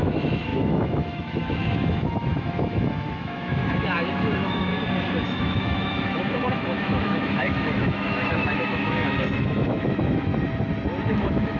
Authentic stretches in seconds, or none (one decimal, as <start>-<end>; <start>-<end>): 3.6-4.1; 4.7-5.2; 10.3-11.1